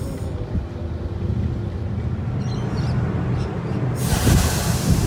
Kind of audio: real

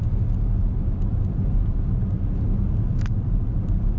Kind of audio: real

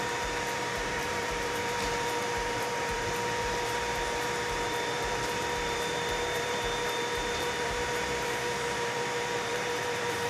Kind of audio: fake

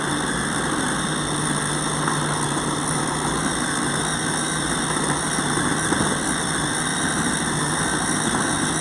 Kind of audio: real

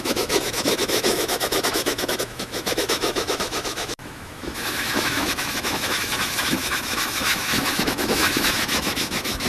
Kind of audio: fake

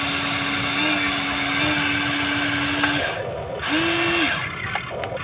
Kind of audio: real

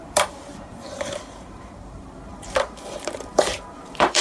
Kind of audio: fake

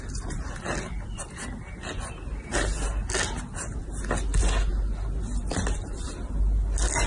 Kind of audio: real